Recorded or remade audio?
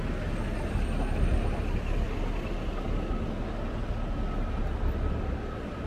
recorded